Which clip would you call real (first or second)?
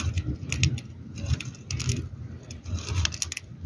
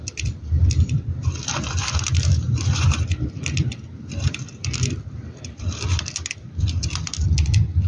first